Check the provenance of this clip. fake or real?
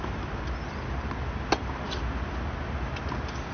real